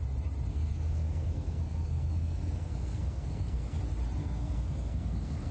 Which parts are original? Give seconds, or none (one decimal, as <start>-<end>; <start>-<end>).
0.0-0.5; 3.8-4.2